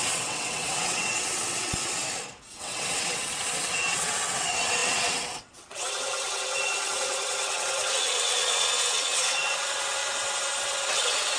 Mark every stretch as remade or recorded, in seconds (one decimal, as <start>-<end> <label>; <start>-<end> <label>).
0.0-2.0 remade; 2.0-2.5 recorded; 2.5-10.0 remade; 10.0-10.6 recorded; 10.6-11.4 remade